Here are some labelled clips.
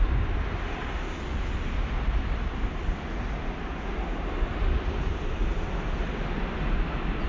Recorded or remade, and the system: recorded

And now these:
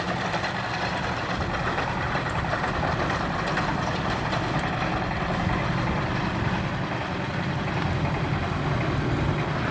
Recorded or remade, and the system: recorded